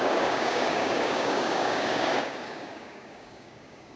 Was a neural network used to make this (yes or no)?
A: yes